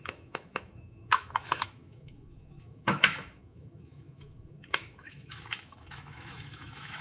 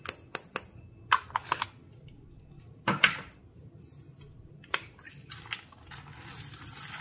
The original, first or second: second